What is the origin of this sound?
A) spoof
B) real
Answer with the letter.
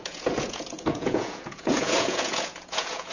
A